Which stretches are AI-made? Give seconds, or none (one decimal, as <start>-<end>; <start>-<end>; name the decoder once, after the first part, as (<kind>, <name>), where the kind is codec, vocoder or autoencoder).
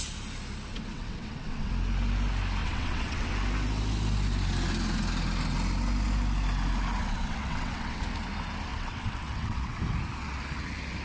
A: 0.7-1.7 (vocoder, WaveNeXt); 2.6-3.3; 7.0-8.0; 8.7-9.8